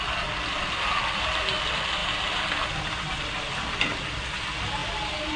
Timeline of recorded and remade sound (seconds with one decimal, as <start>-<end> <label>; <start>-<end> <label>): 0.0-4.8 recorded; 4.8-5.4 remade